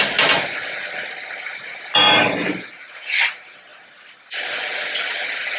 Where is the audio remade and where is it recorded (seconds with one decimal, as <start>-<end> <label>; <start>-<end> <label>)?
0.0-2.0 recorded; 2.0-3.2 remade; 3.2-5.6 recorded